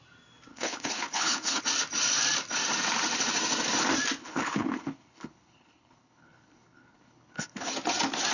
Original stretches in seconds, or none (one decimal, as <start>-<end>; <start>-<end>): 0.0-0.5; 1.6-4.2; 7.7-8.3